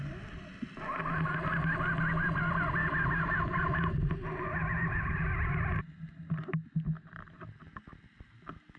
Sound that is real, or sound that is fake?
real